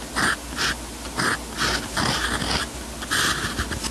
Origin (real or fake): real